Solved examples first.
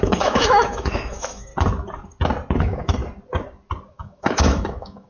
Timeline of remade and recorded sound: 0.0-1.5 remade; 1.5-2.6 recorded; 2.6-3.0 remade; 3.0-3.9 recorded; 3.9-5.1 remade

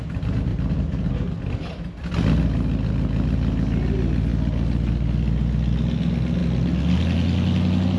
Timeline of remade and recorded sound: 0.0-0.5 recorded; 0.5-1.1 remade; 1.1-8.0 recorded

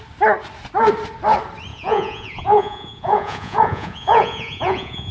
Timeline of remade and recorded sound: 0.0-1.7 recorded; 1.7-5.1 remade

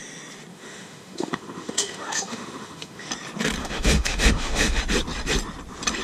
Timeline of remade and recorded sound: 0.0-0.5 recorded; 0.5-3.1 remade; 3.1-3.6 recorded; 3.6-4.8 remade; 4.8-6.0 recorded

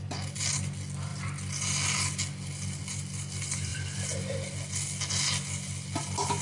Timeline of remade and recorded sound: 0.0-6.4 recorded

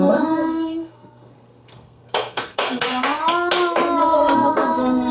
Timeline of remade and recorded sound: 0.0-3.2 remade; 3.2-4.0 recorded; 4.0-5.1 remade